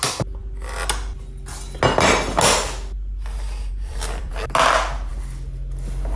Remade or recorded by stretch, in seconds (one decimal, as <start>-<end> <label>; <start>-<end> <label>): 0.0-3.7 recorded; 3.7-4.3 remade; 4.3-6.2 recorded